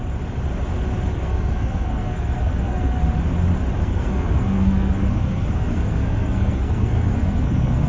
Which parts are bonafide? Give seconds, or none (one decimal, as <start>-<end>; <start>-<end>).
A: 0.0-1.1; 3.0-3.8